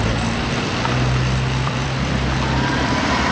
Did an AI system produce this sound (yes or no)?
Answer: yes